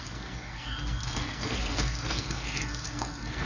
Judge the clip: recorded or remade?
remade